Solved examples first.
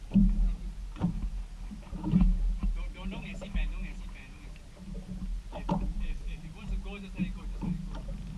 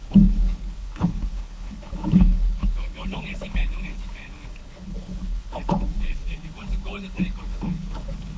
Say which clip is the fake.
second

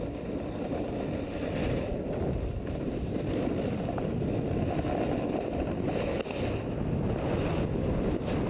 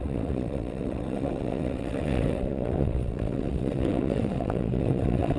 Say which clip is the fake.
second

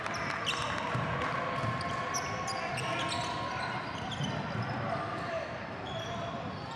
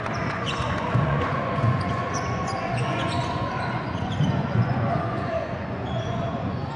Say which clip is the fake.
second